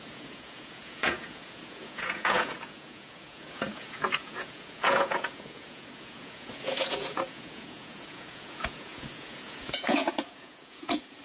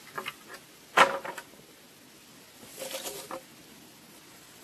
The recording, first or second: second